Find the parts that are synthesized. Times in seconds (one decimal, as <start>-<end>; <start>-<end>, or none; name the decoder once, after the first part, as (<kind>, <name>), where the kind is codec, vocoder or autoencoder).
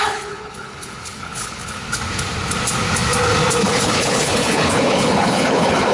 0.0-1.8 (codec, HILCodec); 3.6-5.9